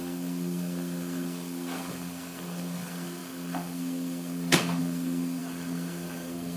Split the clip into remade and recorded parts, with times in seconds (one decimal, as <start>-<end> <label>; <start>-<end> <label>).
0.0-6.6 remade